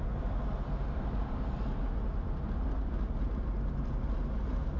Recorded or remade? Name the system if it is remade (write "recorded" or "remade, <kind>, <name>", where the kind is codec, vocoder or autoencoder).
recorded